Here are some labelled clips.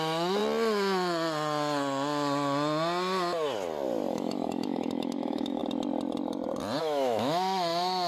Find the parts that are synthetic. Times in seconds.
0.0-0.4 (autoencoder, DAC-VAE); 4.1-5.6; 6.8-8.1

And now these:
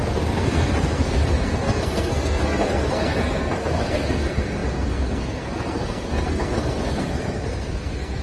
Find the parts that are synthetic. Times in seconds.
0.0-8.2 (codec, SNAC)

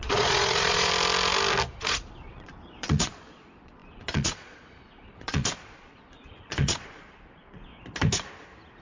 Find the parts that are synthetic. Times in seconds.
0.0-0.9 (vocoder, Vocos); 1.8-7.7

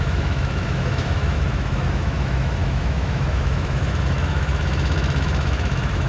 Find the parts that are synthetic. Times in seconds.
0.0-6.1 (autoencoder, DAC-VAE)

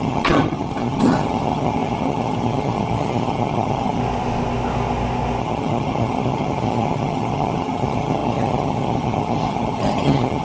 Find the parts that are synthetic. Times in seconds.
0.0-4.0 (vocoder, HiFi-GAN); 5.4-10.4

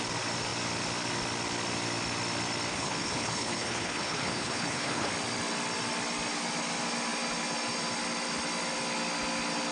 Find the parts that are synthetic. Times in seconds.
2.7-5.1 (codec, HILCodec)

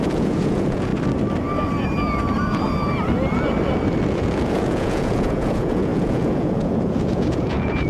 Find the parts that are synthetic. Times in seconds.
0.0-0.9 (vocoder, Vocos); 4.1-7.9

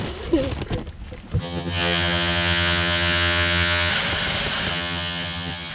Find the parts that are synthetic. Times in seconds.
1.4-3.9 (vocoder, HiFi-GAN); 4.7-5.7